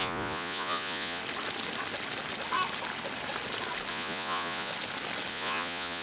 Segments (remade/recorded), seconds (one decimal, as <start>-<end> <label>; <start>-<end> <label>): 0.0-1.2 remade; 1.2-3.9 recorded; 3.9-4.7 remade; 4.7-5.3 recorded; 5.3-6.0 remade